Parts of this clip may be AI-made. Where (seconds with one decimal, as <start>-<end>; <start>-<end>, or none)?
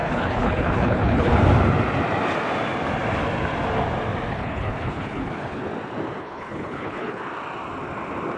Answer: 0.0-1.3; 4.3-5.6; 6.2-7.2